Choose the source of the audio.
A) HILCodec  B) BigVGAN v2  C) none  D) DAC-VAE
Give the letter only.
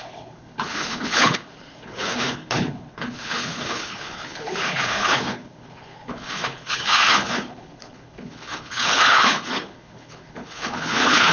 A